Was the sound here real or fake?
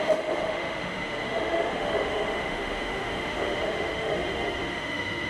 fake